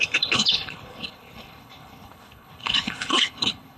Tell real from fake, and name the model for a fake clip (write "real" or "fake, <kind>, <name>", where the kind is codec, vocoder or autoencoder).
fake, codec, HILCodec